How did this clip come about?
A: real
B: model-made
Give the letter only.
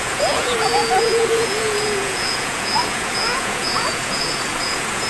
B